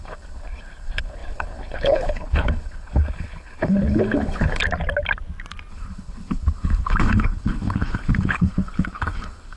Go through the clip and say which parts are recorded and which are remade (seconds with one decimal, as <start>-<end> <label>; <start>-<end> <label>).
0.0-4.6 remade; 4.6-5.7 recorded; 5.7-9.6 remade